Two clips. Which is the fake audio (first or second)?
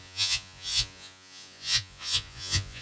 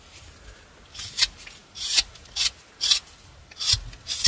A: first